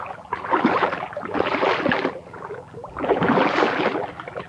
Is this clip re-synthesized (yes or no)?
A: yes